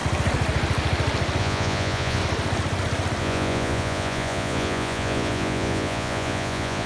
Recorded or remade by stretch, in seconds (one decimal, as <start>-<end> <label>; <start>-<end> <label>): 0.0-1.4 recorded; 1.4-2.2 remade; 2.2-3.2 recorded; 3.2-6.9 remade